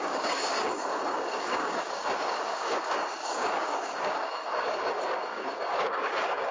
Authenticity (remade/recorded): remade